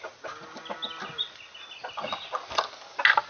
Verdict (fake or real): real